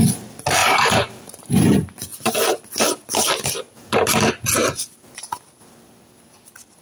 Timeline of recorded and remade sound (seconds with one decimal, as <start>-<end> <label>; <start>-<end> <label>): 0.0-0.6 recorded; 0.6-1.5 remade; 1.5-6.8 recorded